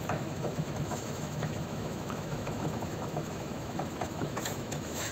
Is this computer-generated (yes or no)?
yes